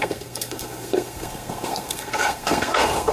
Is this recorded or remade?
remade